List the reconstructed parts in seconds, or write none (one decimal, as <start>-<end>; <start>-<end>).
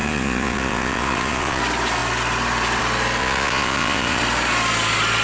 0.0-1.6; 3.2-4.2